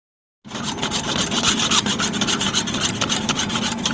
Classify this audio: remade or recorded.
recorded